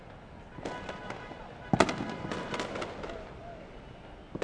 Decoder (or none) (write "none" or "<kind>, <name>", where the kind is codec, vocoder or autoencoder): none